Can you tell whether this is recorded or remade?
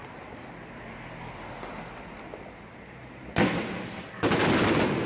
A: recorded